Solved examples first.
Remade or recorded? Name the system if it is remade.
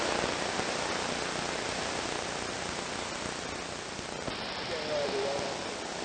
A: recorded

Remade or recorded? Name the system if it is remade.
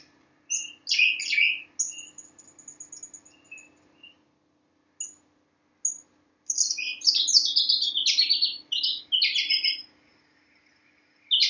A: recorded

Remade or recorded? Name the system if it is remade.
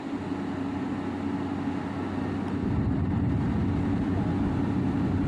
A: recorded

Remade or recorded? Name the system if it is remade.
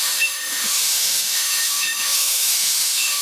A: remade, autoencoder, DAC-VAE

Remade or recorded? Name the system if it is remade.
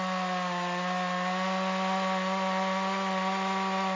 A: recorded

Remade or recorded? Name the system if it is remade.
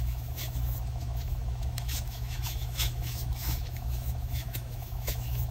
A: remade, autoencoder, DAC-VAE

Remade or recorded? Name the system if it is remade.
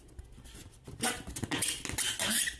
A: recorded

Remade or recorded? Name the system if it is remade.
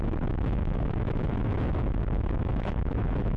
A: remade, autoencoder, DAC-VAE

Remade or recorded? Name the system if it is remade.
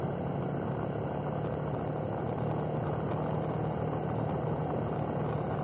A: recorded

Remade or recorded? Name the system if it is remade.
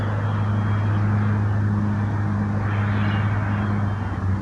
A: recorded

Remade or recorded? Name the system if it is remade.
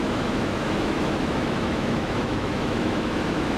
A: remade, autoencoder, DAC-VAE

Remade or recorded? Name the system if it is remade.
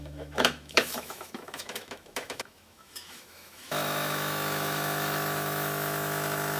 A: remade, autoencoder, DAC-VAE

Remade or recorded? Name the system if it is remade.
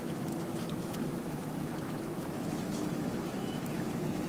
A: remade, autoencoder, DAC-VAE